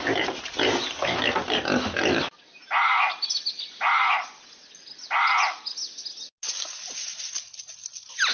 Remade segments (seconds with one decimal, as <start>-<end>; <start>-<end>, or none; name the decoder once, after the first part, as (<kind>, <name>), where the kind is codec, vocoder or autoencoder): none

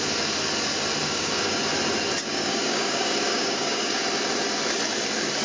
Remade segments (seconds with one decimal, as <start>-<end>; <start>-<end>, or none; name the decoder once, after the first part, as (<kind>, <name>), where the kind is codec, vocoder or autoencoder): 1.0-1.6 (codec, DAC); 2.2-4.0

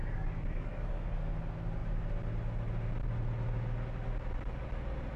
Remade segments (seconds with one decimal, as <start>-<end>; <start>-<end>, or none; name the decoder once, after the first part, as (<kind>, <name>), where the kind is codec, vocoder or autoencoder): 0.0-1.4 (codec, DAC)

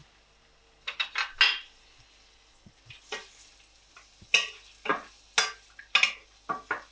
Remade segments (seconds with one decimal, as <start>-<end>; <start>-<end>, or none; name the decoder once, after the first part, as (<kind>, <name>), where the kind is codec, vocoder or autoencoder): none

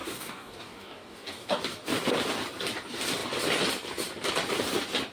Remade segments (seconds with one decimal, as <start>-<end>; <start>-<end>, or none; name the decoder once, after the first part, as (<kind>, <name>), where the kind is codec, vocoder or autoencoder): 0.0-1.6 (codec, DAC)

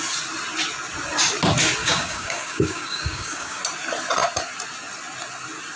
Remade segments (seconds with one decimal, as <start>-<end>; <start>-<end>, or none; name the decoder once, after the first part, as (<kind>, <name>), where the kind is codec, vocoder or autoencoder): 1.8-3.6 (codec, DAC)

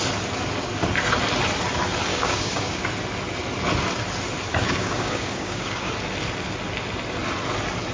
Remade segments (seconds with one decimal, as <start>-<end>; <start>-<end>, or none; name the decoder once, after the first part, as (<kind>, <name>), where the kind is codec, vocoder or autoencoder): 2.1-2.8 (codec, DAC); 4.5-5.9

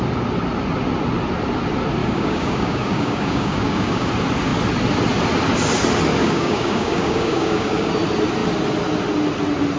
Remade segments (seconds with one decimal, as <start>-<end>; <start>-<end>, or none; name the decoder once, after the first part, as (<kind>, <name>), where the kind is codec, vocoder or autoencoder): 2.0-4.1 (codec, DAC); 6.2-7.9